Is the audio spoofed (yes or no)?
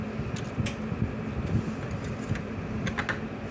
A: no